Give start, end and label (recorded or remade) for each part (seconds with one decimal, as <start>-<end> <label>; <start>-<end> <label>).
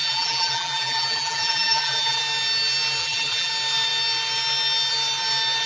0.0-2.2 remade; 2.2-3.0 recorded; 3.0-3.5 remade; 3.5-5.7 recorded